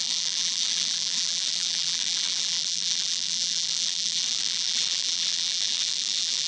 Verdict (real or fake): fake